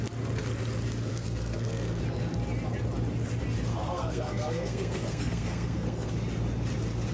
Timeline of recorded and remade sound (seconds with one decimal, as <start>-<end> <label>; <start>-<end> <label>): 0.0-1.1 recorded; 1.1-2.0 remade; 2.0-3.7 recorded; 3.7-6.1 remade; 6.1-7.1 recorded